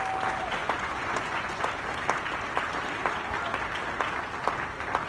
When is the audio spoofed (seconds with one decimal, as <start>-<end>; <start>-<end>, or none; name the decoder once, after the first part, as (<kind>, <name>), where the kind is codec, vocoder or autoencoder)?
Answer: 0.6-1.7 (vocoder, Vocos)